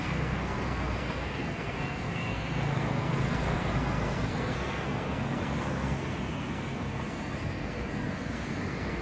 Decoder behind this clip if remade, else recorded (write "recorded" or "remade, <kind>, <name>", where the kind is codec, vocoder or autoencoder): remade, codec, SNAC